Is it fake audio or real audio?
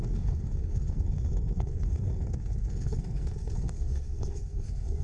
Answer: fake